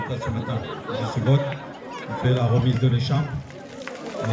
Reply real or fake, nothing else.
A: fake